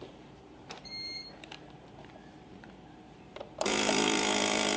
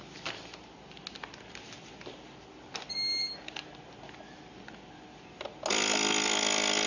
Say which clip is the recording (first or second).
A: second